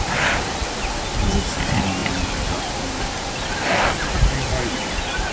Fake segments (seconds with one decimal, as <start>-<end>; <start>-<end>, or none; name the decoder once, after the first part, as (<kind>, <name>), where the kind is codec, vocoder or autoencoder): none